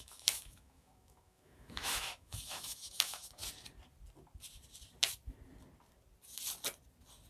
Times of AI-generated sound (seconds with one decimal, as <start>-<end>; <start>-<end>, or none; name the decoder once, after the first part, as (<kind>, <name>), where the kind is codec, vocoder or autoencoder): 0.0-3.4 (autoencoder, DAC-VAE)